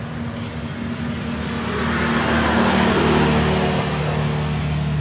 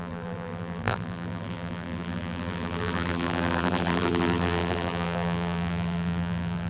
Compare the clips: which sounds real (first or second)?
first